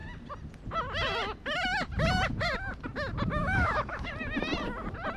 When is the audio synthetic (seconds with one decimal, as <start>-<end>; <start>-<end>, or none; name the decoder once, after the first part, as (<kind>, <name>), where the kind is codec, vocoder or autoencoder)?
3.4-4.1 (autoencoder, DAC-VAE)

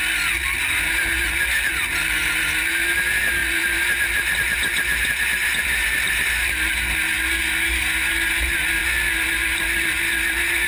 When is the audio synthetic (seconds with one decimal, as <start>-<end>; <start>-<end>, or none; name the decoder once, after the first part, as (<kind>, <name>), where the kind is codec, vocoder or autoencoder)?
none

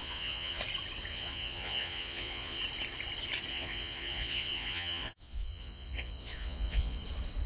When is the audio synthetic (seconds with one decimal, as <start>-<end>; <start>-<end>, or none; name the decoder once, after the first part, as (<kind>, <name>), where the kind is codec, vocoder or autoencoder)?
0.0-0.6 (vocoder, Vocos); 1.1-2.6; 3.5-7.0

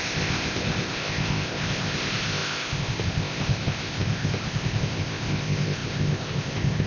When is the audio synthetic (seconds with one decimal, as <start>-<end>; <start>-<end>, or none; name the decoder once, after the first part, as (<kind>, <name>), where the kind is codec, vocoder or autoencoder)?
0.0-6.9 (codec, ZipCodec)

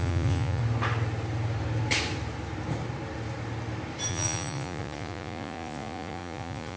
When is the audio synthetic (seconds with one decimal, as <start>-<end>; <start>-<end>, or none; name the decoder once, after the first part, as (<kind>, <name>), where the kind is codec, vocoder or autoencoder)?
0.0-0.6 (vocoder, Vocos); 4.1-6.8